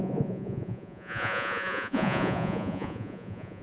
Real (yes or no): no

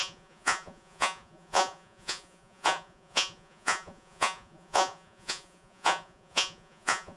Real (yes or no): no